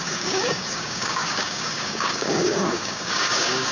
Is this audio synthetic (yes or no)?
yes